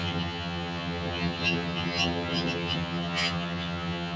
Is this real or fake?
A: fake